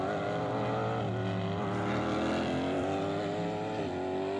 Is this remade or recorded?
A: recorded